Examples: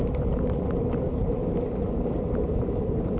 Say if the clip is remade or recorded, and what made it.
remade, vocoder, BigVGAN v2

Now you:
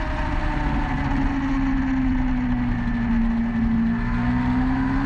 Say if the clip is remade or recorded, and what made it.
recorded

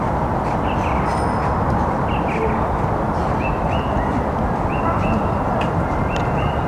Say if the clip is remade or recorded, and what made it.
recorded